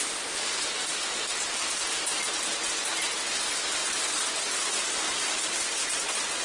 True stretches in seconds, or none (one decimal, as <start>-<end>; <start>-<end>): 0.0-6.4